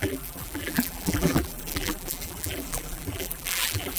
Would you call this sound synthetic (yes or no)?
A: yes